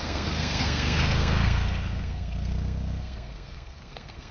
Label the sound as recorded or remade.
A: remade